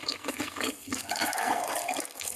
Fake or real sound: fake